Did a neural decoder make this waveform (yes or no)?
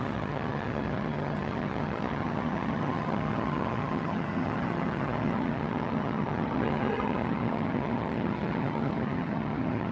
yes